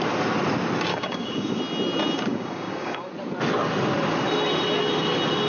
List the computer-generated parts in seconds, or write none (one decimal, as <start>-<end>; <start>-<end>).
0.9-1.6; 2.3-3.1